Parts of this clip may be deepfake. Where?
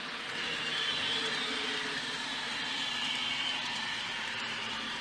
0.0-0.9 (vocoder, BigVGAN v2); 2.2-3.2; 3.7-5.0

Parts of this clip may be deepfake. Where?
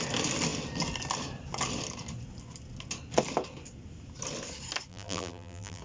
4.9-5.8 (vocoder, BigVGAN v2)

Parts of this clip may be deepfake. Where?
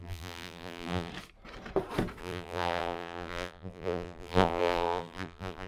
0.0-1.1 (vocoder, BigVGAN v2); 2.2-5.7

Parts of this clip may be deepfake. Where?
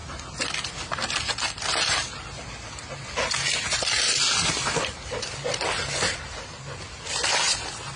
0.0-8.0 (vocoder, BigVGAN v2)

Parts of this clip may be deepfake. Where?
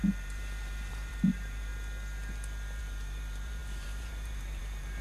0.0-1.7 (vocoder, BigVGAN v2); 2.8-5.0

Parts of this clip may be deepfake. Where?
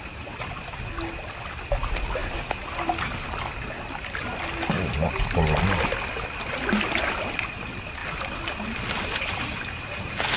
8.0-9.3 (vocoder, BigVGAN v2)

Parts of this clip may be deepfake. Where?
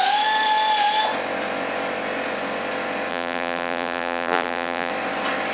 3.1-4.9 (vocoder, BigVGAN v2)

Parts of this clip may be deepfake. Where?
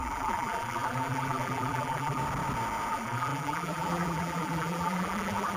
0.0-2.2 (vocoder, BigVGAN v2); 2.9-5.6